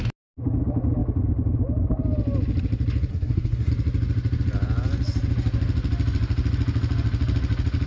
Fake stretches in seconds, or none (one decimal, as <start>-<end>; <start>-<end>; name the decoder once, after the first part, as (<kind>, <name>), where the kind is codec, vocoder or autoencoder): 3.1-3.7 (codec, SNAC)